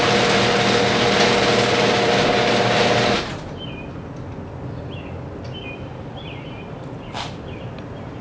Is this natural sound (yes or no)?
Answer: yes